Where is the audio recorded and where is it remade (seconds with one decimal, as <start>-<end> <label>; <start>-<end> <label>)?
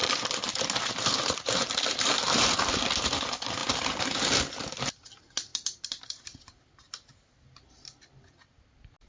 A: 0.0-2.8 remade; 2.8-5.5 recorded; 5.5-6.9 remade; 6.9-9.1 recorded